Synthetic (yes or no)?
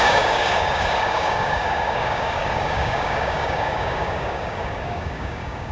yes